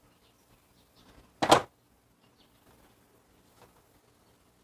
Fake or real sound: real